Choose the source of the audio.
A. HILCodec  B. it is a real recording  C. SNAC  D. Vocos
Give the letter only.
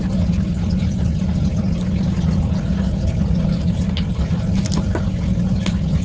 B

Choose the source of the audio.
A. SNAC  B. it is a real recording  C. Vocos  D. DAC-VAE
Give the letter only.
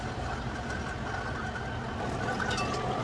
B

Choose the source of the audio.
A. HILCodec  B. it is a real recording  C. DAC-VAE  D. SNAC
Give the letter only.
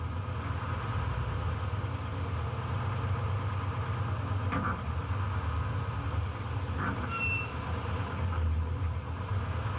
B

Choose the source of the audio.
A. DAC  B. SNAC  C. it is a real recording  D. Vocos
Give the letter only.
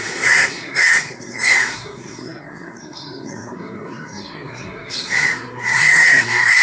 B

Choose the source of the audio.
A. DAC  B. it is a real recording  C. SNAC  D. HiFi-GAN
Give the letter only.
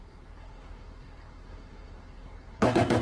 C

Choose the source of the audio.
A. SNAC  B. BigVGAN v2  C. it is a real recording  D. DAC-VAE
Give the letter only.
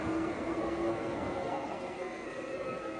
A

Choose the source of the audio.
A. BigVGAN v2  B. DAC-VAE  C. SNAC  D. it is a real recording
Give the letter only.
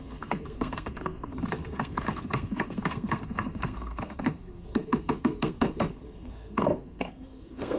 C